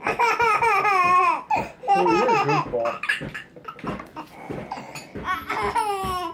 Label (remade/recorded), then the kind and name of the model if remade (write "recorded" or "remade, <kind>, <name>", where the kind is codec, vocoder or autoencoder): recorded